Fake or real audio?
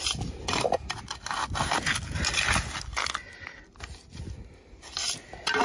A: real